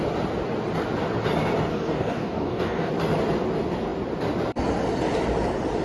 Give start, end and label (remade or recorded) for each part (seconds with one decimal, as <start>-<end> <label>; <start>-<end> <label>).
0.0-1.7 recorded; 1.7-2.9 remade; 2.9-5.8 recorded